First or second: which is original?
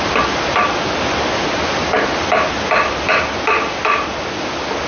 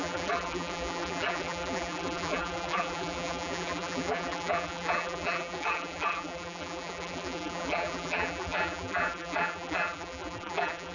first